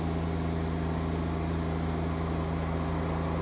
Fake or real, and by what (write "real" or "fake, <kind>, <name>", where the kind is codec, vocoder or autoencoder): real